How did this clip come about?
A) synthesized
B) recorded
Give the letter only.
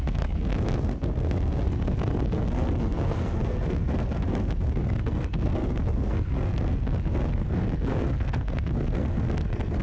A